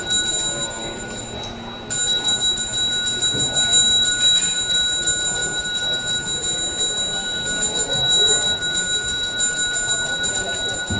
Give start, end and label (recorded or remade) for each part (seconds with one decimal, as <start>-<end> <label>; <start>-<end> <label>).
0.0-11.0 recorded